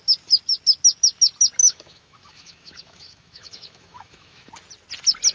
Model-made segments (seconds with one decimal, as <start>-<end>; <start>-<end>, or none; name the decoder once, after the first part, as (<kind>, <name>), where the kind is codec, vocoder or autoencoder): 1.6-4.5 (autoencoder, DAC-VAE)